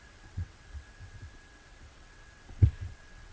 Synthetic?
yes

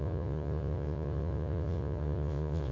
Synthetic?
yes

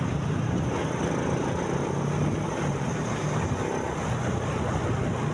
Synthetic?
no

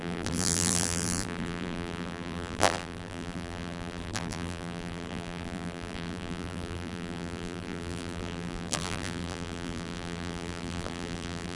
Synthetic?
yes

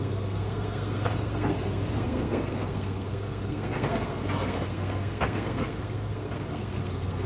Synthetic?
yes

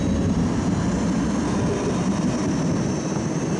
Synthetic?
no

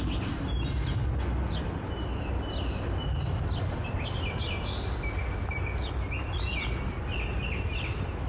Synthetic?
no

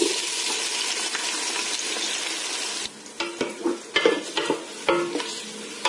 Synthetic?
no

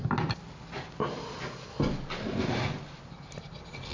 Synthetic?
no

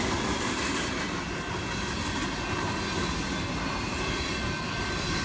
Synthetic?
no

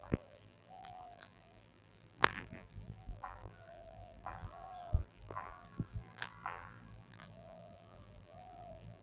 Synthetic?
yes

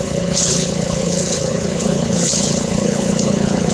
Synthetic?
yes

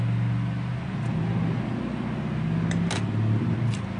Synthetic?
no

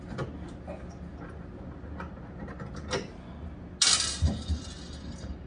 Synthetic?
no